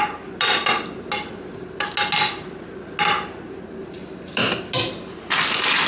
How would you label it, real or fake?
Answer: real